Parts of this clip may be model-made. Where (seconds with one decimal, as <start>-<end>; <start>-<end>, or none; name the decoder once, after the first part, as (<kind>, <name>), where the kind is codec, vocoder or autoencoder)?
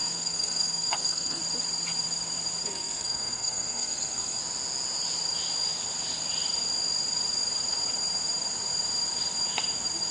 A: 0.0-1.4 (codec, SNAC); 2.6-4.4